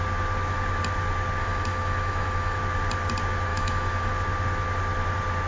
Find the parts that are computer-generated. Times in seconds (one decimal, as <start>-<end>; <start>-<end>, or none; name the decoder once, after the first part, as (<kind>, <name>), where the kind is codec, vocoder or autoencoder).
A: 1.4-2.6 (autoencoder, DAC-VAE); 3.5-4.1